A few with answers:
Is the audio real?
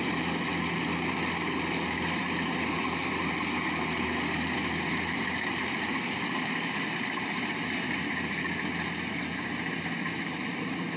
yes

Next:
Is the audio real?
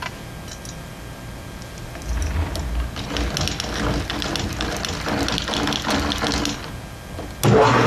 yes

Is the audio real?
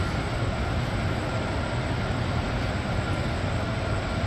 yes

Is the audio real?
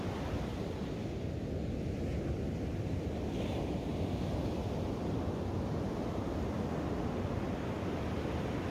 yes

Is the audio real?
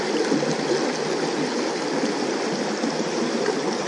yes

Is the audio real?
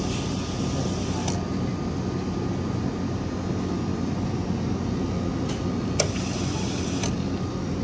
yes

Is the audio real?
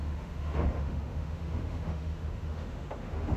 no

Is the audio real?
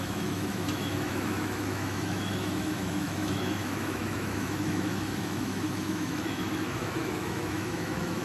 no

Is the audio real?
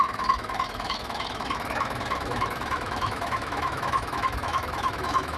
no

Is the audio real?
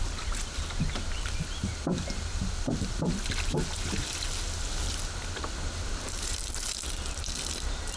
yes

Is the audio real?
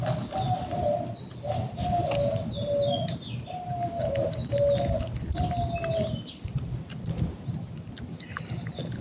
yes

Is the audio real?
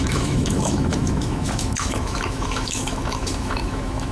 no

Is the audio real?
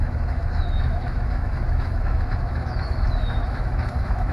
no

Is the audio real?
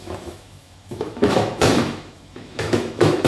no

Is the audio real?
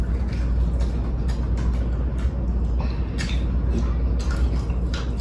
yes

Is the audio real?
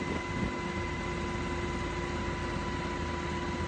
yes